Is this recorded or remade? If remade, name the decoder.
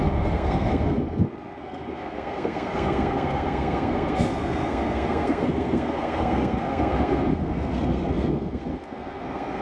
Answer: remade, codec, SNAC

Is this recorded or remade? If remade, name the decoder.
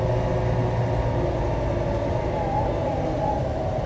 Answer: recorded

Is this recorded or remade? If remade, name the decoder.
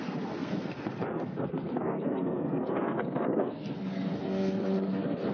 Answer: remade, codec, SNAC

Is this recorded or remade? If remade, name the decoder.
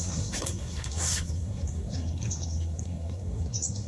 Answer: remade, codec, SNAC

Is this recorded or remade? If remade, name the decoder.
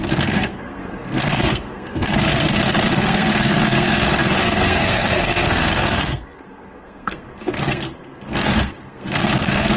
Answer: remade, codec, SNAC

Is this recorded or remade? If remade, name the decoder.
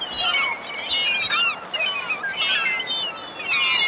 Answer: recorded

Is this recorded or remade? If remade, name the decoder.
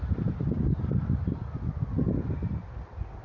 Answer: recorded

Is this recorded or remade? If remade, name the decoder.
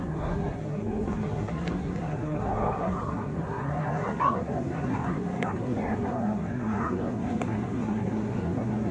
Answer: remade, codec, SNAC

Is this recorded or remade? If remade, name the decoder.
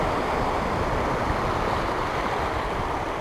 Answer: recorded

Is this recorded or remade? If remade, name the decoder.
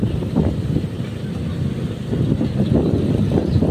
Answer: recorded